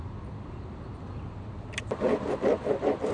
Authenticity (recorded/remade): recorded